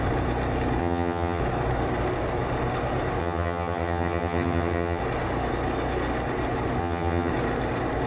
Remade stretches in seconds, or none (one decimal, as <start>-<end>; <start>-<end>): 0.8-1.4; 3.2-5.0; 6.8-7.3